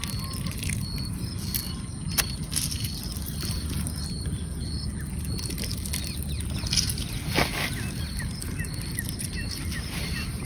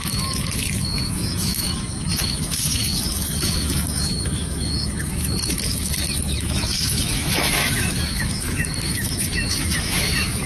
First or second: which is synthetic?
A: second